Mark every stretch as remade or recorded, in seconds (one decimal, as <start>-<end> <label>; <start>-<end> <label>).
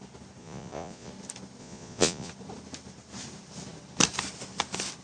0.0-0.4 recorded; 0.4-1.1 remade; 1.1-1.6 recorded; 1.6-2.3 remade; 2.3-5.0 recorded